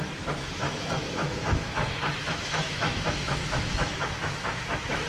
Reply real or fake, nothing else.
fake